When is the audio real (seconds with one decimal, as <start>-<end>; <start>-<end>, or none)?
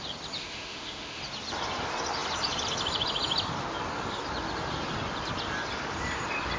0.0-0.4; 1.2-6.6